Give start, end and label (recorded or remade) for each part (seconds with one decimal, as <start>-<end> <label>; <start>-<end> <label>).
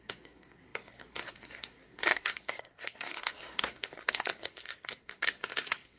0.0-6.0 remade